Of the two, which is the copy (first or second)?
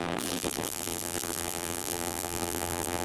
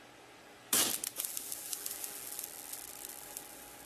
first